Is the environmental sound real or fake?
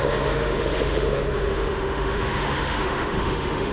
fake